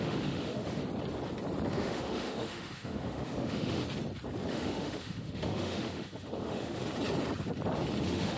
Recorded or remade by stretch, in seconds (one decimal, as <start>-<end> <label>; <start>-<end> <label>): 0.0-0.8 remade; 0.8-1.7 recorded; 1.7-3.8 remade; 3.8-4.5 recorded; 4.5-6.8 remade; 6.8-8.0 recorded; 8.0-8.4 remade